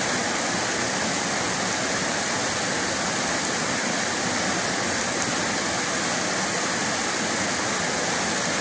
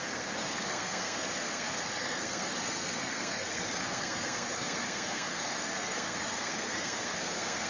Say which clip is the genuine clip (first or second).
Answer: first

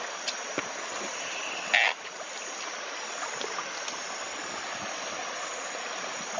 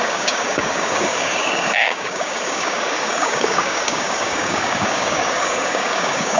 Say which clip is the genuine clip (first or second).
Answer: first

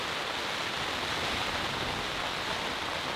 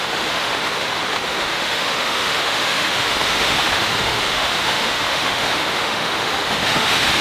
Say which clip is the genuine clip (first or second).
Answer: first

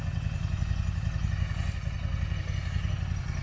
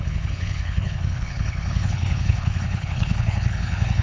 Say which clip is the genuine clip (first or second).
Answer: first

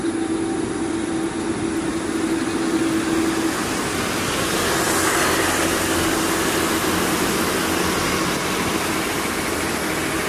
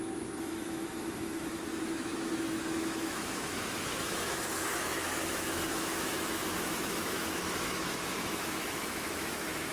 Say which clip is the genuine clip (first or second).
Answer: first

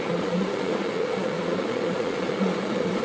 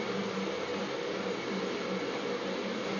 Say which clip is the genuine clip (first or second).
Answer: second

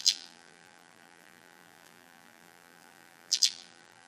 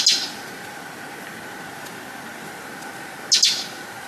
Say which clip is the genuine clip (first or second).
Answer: second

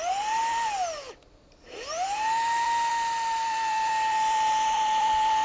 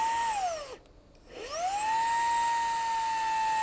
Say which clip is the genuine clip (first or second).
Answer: second